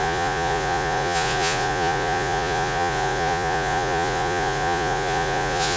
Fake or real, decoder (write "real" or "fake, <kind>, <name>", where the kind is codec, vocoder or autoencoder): fake, vocoder, Vocos